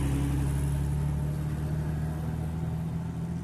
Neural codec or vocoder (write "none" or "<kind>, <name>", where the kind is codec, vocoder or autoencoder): none